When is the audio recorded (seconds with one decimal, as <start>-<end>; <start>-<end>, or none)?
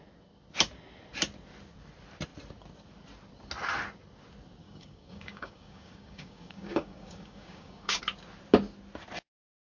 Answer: 0.0-4.6; 8.0-9.7